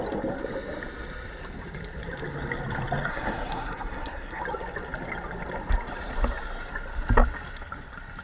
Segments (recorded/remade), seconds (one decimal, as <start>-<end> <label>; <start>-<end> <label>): 0.0-3.1 recorded; 3.1-4.4 remade; 4.4-8.2 recorded